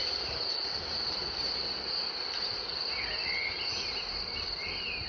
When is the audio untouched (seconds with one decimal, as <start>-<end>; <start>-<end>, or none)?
0.0-5.1